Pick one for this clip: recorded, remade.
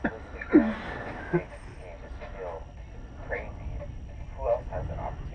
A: recorded